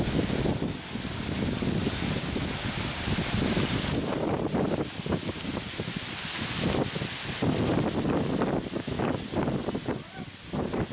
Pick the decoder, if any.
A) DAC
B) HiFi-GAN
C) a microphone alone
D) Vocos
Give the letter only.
C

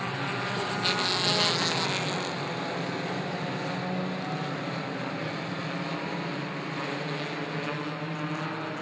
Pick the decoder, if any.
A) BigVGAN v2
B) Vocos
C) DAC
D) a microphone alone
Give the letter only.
D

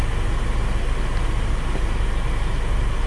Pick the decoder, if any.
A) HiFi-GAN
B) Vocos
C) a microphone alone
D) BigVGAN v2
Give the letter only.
C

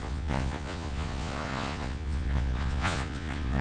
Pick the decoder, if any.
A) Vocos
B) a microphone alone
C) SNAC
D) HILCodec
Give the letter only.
A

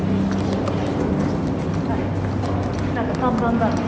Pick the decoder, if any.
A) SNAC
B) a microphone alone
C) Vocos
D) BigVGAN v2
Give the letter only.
B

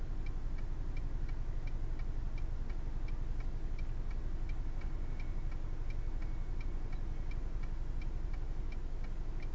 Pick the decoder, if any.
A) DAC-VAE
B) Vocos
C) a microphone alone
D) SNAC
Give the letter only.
C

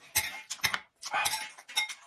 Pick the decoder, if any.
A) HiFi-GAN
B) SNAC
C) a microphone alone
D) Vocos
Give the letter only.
C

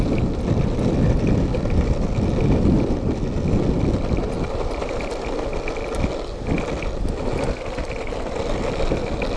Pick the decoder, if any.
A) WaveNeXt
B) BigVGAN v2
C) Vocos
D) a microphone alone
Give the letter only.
D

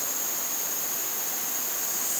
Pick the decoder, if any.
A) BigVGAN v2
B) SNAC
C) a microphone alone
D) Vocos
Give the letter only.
C